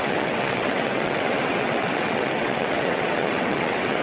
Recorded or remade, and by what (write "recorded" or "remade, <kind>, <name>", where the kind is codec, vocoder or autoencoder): remade, vocoder, WaveNeXt